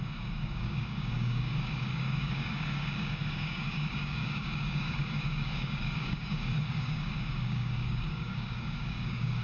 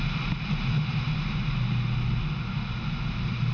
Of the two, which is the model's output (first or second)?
first